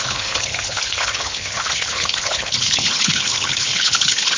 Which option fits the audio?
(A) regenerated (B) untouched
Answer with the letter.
A